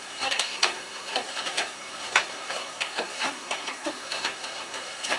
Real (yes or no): no